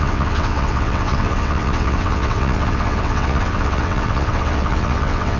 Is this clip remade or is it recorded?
remade